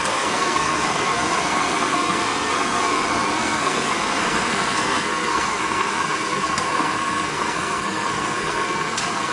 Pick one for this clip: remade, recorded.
remade